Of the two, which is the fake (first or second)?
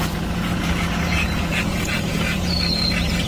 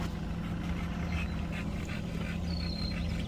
first